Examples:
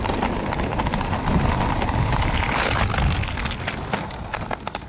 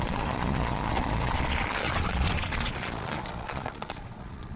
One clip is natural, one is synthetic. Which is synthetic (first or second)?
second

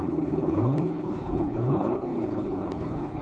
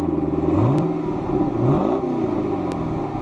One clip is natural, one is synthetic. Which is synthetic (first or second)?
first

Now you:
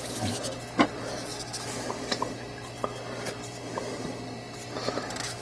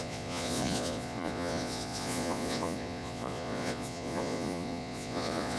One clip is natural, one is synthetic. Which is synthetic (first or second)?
second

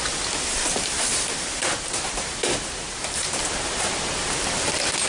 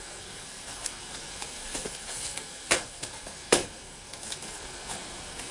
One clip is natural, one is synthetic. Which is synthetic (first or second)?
second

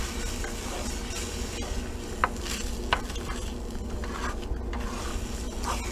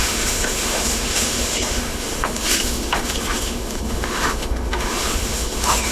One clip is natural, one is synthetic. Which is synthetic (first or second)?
second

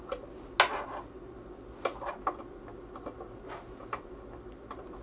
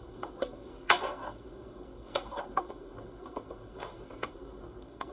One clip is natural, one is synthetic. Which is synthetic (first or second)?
second